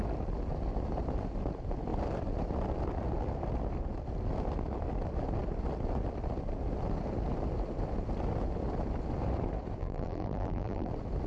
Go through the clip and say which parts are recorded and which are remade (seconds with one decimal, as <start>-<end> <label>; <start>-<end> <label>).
0.0-9.8 recorded; 9.8-10.9 remade; 10.9-11.3 recorded